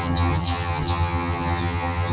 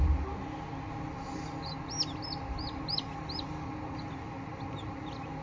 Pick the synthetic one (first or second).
first